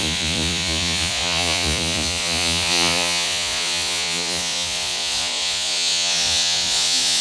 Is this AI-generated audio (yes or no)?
yes